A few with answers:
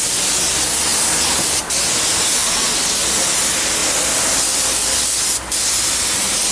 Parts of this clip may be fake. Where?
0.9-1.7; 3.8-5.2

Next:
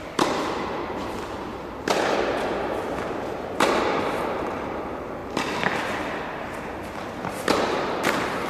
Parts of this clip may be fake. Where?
5.2-6.9

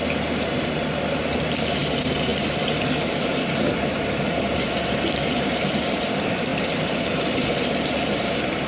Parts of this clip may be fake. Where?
0.0-8.7

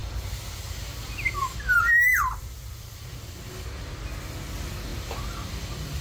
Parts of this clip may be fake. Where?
0.0-1.4; 2.1-3.5

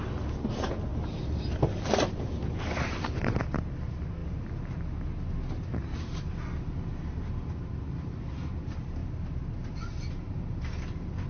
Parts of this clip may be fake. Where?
0.9-3.4

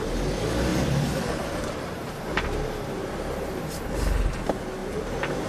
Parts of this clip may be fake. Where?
0.7-3.1; 4.8-5.5

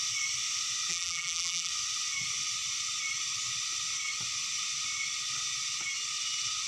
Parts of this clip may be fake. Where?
0.9-1.7

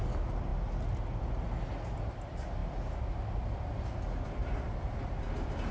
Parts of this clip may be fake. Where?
none